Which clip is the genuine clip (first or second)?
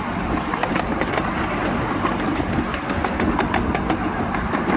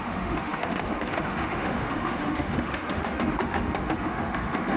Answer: first